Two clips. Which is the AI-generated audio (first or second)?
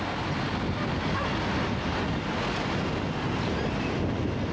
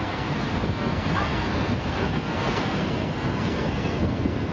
second